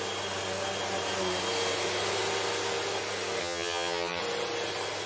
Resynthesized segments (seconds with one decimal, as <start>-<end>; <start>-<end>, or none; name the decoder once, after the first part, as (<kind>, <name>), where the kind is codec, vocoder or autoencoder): 3.4-4.2 (vocoder, HiFi-GAN)